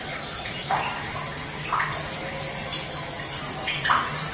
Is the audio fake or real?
real